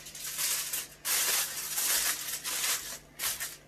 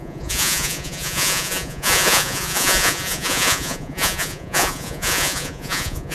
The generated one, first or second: second